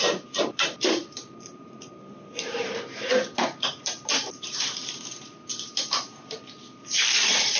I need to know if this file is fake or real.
fake